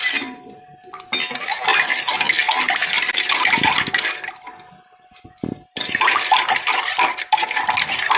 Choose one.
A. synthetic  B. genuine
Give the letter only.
B